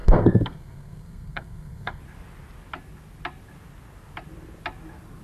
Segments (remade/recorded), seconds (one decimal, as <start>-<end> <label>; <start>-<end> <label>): 0.0-2.0 remade; 2.0-5.2 recorded